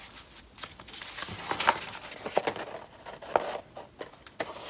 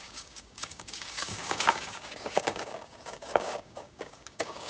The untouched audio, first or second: first